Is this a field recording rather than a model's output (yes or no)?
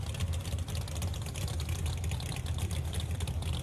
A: yes